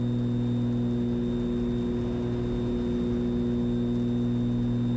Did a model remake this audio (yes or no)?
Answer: no